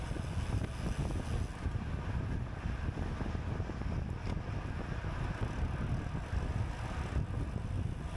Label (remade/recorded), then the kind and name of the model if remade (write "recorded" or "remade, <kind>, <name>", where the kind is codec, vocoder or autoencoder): recorded